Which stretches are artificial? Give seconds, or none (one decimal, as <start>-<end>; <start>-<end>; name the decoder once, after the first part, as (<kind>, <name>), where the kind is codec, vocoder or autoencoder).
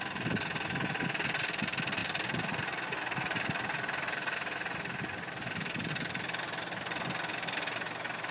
2.0-5.9 (vocoder, BigVGAN v2)